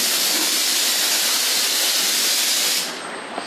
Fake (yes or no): no